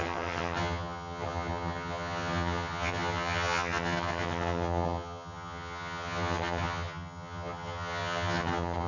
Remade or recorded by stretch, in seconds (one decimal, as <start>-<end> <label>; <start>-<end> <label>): 0.0-8.9 remade